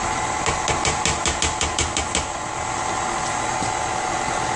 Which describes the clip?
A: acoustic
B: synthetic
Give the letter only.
A